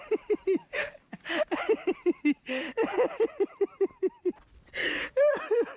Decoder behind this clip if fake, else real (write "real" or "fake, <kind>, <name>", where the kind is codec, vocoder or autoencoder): real